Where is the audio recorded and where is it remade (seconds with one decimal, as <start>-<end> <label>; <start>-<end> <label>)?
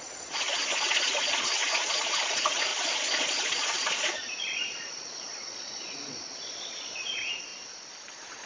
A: 0.0-7.5 remade; 7.5-8.1 recorded; 8.1-8.5 remade